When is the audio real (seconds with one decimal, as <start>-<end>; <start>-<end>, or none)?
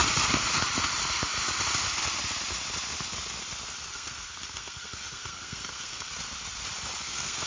0.0-3.9; 6.1-7.0